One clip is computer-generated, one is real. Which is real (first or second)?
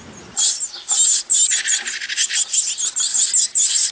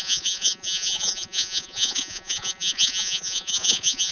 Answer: first